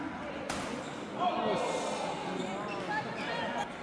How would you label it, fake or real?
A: real